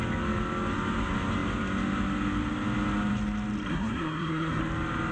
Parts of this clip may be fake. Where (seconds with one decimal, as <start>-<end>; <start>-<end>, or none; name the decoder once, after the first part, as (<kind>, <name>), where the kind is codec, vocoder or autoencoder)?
3.7-4.6 (codec, SNAC)